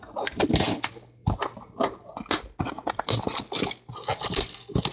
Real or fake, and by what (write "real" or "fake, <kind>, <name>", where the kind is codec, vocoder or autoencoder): real